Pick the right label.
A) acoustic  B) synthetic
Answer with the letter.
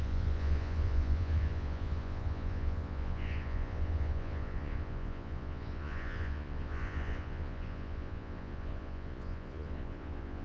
B